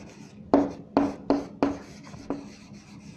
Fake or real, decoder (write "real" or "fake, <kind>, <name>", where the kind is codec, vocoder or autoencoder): real